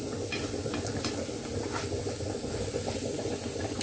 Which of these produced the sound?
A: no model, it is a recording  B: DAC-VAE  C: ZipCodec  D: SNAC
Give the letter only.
A